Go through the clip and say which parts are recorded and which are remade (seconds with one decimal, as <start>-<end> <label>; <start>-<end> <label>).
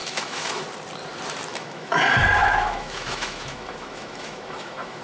0.0-0.6 remade; 0.6-1.5 recorded; 1.5-2.0 remade; 2.0-2.4 recorded; 2.4-5.0 remade